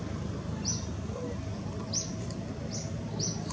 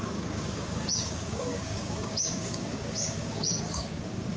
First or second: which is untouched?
first